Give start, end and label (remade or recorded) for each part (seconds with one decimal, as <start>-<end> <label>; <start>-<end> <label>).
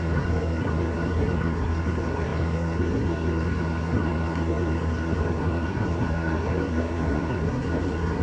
0.0-8.2 remade